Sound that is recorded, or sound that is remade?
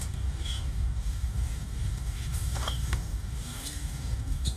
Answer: remade